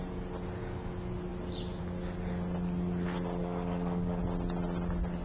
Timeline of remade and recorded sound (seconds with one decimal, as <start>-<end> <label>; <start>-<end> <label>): 0.0-3.4 recorded; 3.4-4.2 remade; 4.2-5.2 recorded